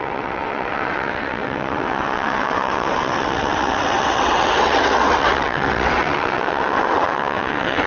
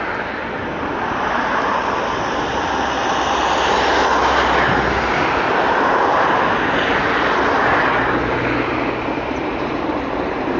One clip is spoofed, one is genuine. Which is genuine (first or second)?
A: second